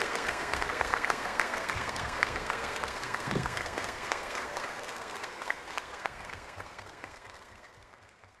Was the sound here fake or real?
fake